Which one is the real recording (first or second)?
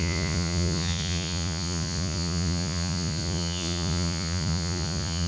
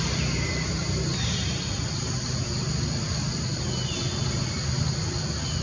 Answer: second